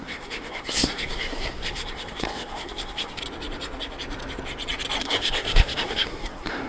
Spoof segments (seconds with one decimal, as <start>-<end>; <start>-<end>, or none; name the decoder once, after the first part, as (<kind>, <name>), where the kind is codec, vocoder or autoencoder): 0.0-3.2 (codec, SNAC); 5.0-6.7